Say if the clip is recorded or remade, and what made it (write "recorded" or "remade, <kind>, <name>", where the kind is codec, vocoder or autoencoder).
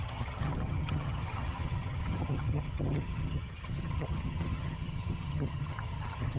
remade, vocoder, HiFi-GAN